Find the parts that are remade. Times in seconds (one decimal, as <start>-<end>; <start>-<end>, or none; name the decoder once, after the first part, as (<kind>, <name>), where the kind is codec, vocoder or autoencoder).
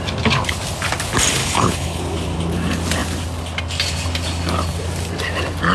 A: 1.4-2.0 (codec, HILCodec)